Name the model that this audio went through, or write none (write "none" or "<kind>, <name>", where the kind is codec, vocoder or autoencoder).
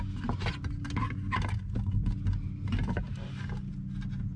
none